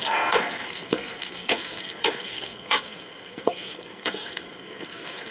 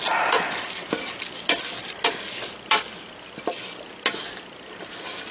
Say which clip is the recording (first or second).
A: second